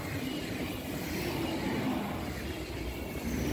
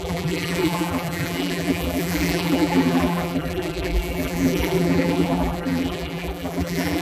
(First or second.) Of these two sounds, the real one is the first